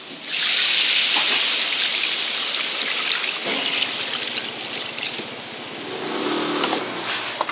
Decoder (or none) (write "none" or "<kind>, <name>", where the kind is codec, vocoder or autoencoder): none